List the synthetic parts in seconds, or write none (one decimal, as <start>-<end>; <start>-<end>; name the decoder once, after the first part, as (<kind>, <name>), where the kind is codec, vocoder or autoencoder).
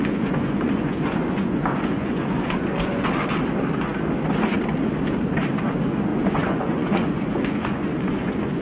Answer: 0.0-3.1 (vocoder, Vocos); 6.1-8.6